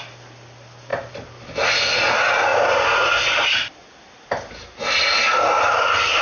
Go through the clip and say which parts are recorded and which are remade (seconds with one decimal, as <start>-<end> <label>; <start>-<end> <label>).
0.0-6.2 recorded

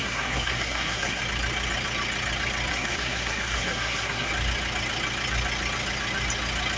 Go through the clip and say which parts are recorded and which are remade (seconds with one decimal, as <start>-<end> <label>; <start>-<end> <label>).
0.0-1.2 remade; 1.2-2.7 recorded; 2.7-4.3 remade; 4.3-6.8 recorded

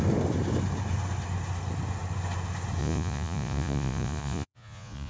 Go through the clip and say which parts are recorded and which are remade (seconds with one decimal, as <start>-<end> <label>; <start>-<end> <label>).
0.0-2.8 recorded; 2.8-5.1 remade

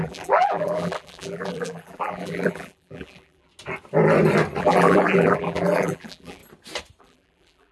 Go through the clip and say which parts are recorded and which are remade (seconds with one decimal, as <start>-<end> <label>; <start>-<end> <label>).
0.0-3.5 remade; 3.5-4.6 recorded; 4.6-6.4 remade; 6.4-7.0 recorded; 7.0-7.7 remade

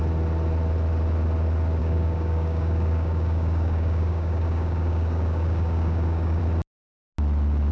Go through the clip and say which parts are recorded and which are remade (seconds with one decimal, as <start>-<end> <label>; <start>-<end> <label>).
0.0-1.8 recorded; 1.8-6.4 remade; 6.4-7.7 recorded